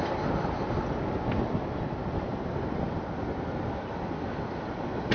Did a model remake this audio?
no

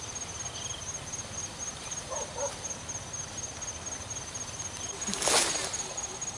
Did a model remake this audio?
no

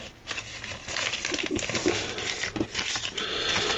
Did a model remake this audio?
no